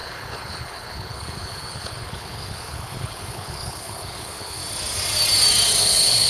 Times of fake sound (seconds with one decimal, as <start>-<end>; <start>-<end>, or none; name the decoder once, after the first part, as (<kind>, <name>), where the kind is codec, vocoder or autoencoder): 0.0-4.6 (codec, HILCodec); 5.8-6.3